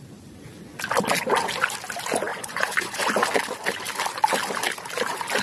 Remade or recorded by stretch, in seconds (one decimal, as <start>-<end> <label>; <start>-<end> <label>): 0.0-2.3 recorded; 2.3-3.0 remade; 3.0-5.4 recorded